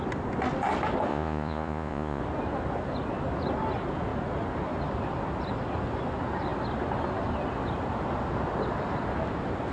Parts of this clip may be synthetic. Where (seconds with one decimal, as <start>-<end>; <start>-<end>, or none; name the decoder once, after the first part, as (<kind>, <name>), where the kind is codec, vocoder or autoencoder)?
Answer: 1.1-2.2 (vocoder, Vocos)